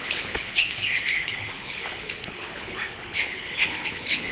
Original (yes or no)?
no